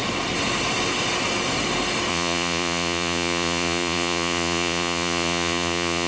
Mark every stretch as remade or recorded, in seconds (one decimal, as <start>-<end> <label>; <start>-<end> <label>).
0.0-2.1 recorded; 2.1-6.1 remade

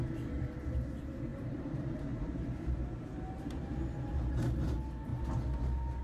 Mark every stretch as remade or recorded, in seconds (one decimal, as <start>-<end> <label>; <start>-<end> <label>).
0.0-1.3 recorded; 1.3-2.0 remade; 2.0-2.8 recorded; 2.8-4.1 remade; 4.1-6.0 recorded

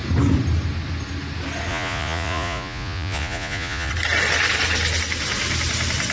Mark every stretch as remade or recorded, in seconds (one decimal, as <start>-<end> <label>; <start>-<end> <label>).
0.0-1.7 recorded; 1.7-3.9 remade; 3.9-6.1 recorded

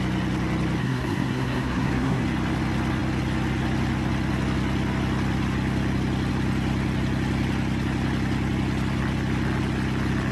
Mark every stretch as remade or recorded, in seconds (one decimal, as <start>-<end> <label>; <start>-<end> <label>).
0.0-0.8 recorded; 0.8-2.2 remade; 2.2-10.3 recorded

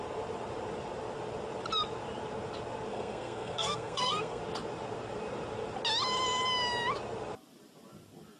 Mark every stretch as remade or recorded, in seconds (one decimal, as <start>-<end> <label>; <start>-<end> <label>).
0.0-2.9 recorded; 2.9-4.4 remade; 4.4-8.4 recorded

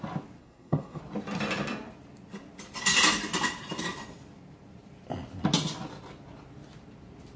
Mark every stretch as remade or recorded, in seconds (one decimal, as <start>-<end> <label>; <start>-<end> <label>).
0.0-0.4 recorded; 0.4-1.0 remade; 1.0-7.4 recorded